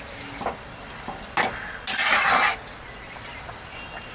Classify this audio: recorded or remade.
recorded